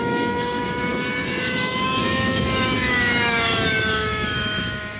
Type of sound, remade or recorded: remade